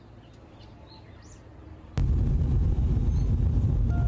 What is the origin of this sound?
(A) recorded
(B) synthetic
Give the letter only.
A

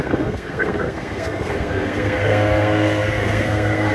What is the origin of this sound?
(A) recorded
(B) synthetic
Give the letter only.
B